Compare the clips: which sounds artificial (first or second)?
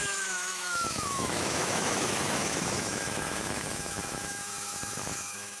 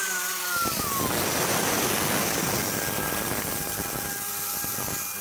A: first